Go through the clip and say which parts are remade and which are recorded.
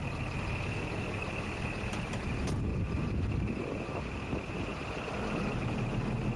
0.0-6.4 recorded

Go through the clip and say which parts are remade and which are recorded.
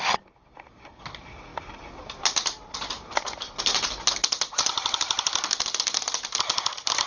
0.0-7.1 recorded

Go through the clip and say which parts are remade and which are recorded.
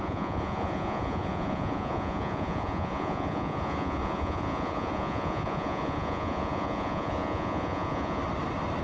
0.0-8.2 remade; 8.2-8.8 recorded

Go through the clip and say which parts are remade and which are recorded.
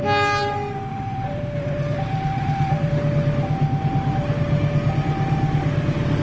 0.0-0.9 recorded; 0.9-2.9 remade; 2.9-6.2 recorded